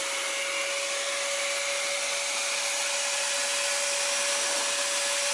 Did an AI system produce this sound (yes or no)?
no